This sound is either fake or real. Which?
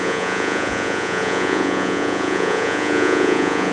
fake